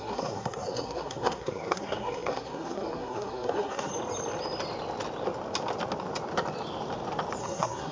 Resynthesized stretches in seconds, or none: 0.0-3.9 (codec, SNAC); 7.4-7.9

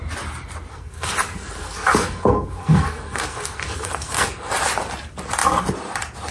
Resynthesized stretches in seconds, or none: 0.7-4.5 (codec, SNAC)

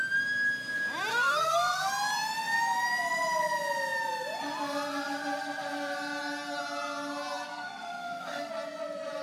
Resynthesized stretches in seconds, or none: 1.1-1.9 (codec, SNAC); 7.5-8.5

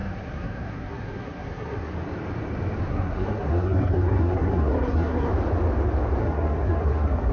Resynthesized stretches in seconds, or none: 0.0-1.9 (codec, SNAC); 2.9-5.3; 6.2-7.3

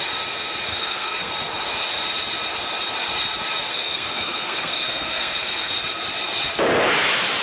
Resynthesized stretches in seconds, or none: 0.7-1.3 (codec, SNAC); 3.7-5.7

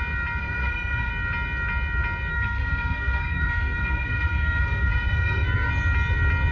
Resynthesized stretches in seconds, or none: 0.4-1.1 (codec, SNAC); 2.3-5.7